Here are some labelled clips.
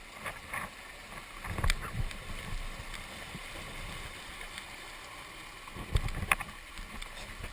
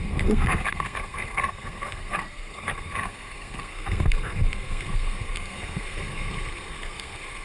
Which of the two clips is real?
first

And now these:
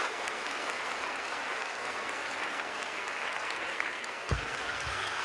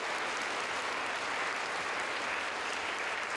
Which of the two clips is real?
second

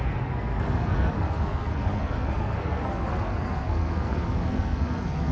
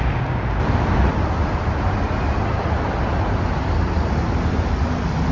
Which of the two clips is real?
second